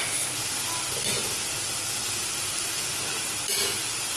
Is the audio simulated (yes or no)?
no